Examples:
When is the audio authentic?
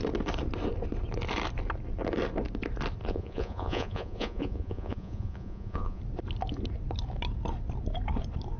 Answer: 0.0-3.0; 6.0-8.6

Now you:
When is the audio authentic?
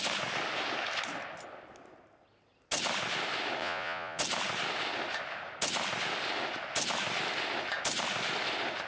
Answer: 0.0-3.6; 4.2-8.9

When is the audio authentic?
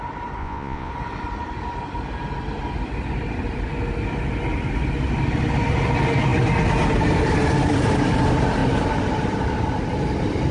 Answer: 0.0-0.4; 0.9-10.5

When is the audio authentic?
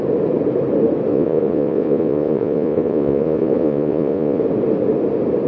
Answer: 0.0-1.1; 4.4-5.5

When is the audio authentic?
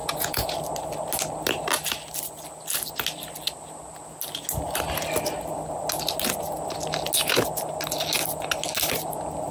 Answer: 0.5-9.5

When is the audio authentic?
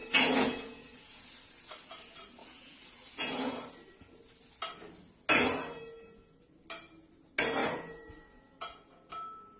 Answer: 1.4-2.4; 3.6-7.6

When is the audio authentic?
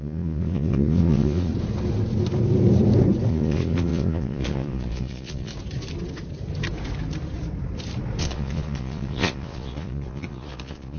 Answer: 1.5-3.3; 5.5-8.2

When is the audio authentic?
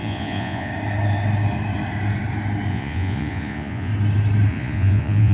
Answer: 0.7-2.7; 3.9-4.5